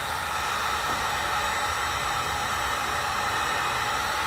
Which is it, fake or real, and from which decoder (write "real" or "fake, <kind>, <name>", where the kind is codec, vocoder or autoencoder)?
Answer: real